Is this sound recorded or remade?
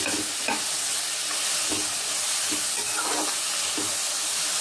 recorded